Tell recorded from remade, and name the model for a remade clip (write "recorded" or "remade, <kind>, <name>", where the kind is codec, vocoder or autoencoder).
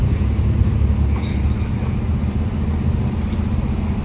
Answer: recorded